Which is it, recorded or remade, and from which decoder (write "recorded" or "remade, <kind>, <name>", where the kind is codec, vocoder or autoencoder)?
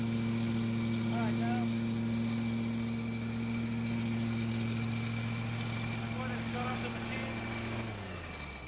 recorded